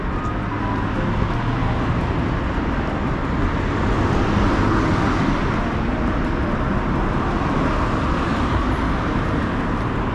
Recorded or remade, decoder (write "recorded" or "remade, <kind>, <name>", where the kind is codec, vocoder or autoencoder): recorded